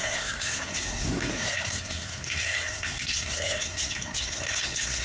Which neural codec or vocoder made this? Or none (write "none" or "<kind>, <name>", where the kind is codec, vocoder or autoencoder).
codec, SNAC